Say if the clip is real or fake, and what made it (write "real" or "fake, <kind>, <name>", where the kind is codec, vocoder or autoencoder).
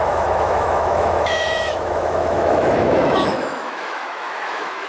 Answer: fake, autoencoder, DAC-VAE